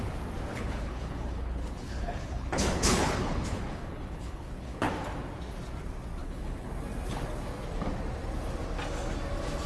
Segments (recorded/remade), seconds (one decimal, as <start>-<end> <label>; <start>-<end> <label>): 0.0-0.5 recorded; 0.5-4.9 remade; 4.9-6.2 recorded; 6.2-6.7 remade; 6.7-9.7 recorded